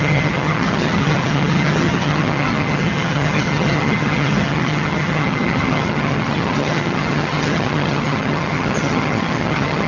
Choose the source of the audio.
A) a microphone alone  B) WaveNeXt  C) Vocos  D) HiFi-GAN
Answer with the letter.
D